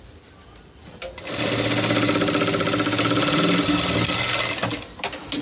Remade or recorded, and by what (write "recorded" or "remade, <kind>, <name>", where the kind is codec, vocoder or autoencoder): recorded